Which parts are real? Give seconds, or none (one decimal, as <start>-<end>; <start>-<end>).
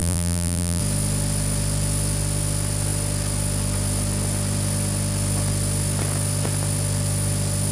0.8-7.7